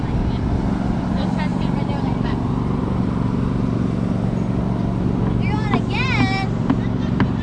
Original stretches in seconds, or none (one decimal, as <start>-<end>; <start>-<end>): 0.0-1.5; 2.5-7.4